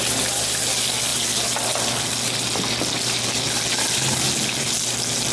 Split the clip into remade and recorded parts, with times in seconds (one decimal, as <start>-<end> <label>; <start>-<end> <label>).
0.0-5.3 recorded